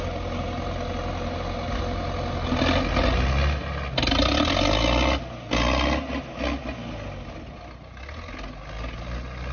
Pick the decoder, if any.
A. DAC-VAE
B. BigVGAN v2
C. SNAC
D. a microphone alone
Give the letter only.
D